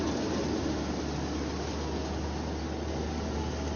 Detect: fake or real real